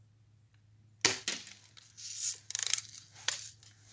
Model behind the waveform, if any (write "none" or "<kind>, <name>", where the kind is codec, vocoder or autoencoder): none